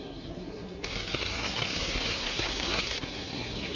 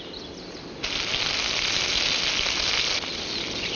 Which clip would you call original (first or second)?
second